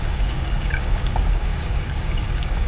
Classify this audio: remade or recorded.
remade